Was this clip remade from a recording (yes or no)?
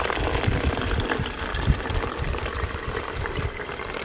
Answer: no